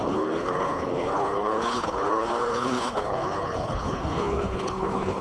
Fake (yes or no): yes